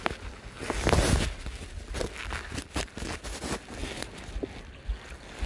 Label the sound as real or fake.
real